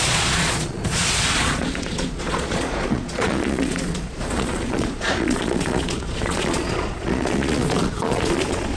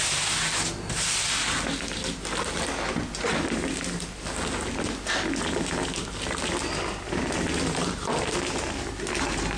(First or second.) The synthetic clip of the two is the first